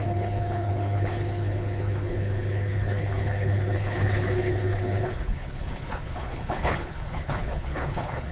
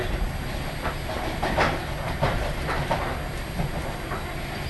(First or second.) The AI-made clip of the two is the first